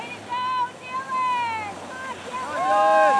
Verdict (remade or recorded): recorded